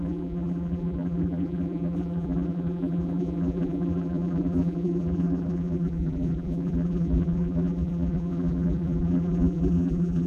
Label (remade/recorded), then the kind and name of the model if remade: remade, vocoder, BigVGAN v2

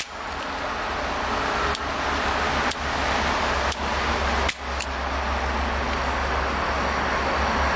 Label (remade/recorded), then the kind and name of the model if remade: recorded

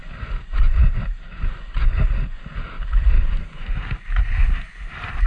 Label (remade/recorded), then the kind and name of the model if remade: recorded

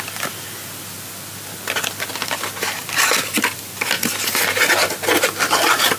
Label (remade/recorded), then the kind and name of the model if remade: recorded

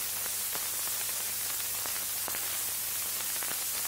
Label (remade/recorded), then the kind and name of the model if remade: recorded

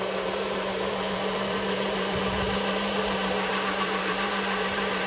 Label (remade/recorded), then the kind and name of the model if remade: remade, vocoder, BigVGAN v2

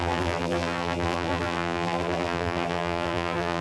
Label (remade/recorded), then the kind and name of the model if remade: remade, vocoder, BigVGAN v2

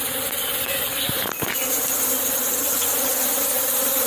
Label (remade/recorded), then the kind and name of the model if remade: remade, vocoder, BigVGAN v2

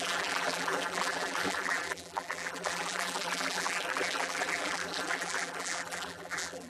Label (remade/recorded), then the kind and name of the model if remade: remade, vocoder, BigVGAN v2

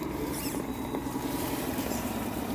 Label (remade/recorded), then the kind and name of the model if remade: remade, vocoder, BigVGAN v2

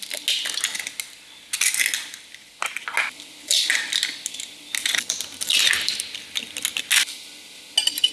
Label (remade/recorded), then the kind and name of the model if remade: recorded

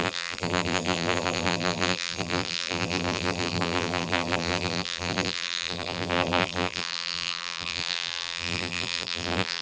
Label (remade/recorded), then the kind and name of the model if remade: remade, vocoder, BigVGAN v2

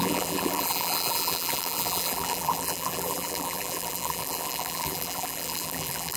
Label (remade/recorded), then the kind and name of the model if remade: remade, vocoder, BigVGAN v2